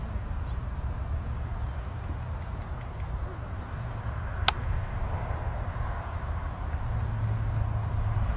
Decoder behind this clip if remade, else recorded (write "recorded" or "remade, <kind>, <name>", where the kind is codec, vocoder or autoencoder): recorded